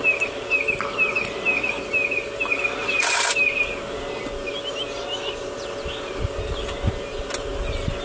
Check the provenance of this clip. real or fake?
real